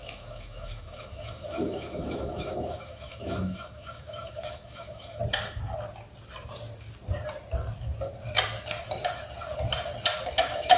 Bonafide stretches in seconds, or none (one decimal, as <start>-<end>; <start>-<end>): 5.2-10.4